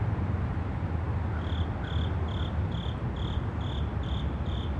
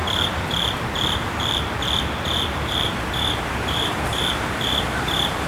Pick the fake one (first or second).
second